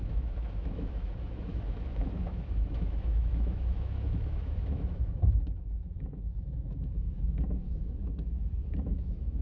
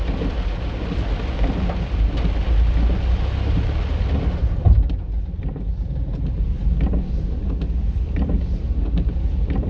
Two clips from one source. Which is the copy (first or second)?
first